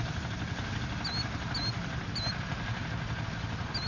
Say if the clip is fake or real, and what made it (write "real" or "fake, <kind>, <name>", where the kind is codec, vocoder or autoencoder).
real